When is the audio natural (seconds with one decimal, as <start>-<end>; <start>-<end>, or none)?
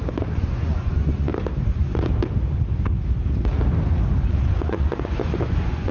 1.3-4.3